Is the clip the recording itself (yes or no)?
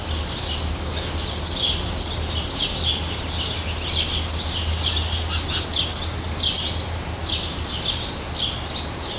yes